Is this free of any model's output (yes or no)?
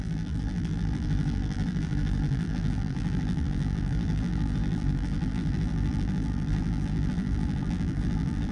no